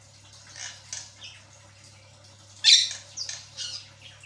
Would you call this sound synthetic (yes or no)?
no